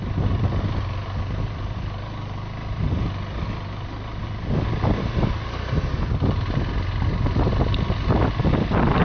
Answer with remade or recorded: recorded